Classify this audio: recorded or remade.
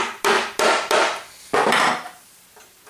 recorded